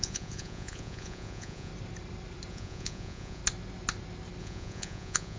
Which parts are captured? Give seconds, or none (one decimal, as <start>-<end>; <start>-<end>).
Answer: 1.7-2.5; 3.4-4.4

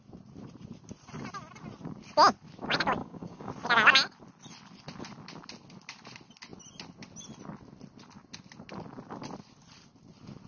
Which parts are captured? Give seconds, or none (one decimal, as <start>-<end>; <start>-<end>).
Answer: 0.0-3.0; 3.5-10.5

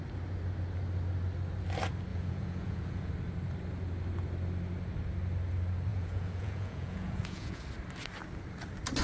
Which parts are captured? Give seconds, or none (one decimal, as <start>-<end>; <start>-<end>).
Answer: 0.0-2.1; 3.1-5.9; 7.6-9.0

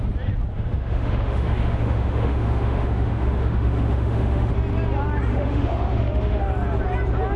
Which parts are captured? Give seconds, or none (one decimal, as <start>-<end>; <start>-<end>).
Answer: 0.0-0.5; 4.5-5.3; 6.5-7.4

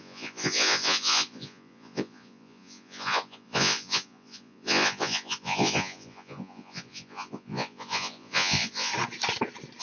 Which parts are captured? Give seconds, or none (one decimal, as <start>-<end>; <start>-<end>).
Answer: 8.9-9.8

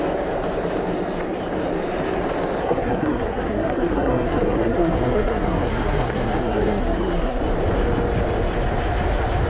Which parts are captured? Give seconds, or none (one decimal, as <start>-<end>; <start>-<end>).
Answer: 0.0-2.6; 7.4-9.5